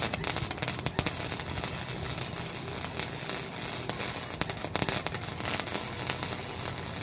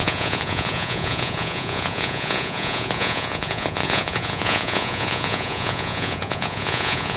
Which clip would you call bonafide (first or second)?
first